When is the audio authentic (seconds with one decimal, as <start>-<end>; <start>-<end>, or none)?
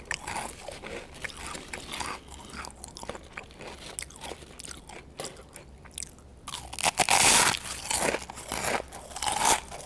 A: 0.0-9.9